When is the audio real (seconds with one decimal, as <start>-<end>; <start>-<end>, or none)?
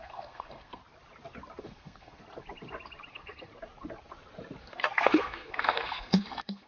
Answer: 0.8-1.6; 2.2-3.1; 3.5-4.6